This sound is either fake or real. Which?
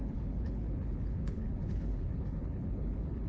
fake